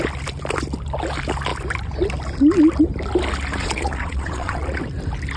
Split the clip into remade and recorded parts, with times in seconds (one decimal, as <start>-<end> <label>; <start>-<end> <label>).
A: 0.0-3.6 recorded; 3.6-4.6 remade; 4.6-5.4 recorded